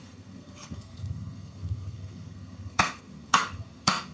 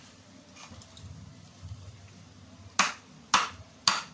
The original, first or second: second